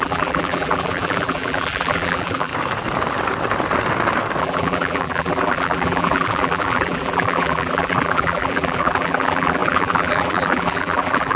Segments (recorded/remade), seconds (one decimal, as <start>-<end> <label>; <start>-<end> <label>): 0.0-2.5 remade; 2.5-4.4 recorded; 4.4-11.4 remade